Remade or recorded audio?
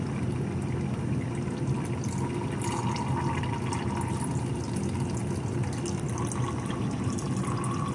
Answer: recorded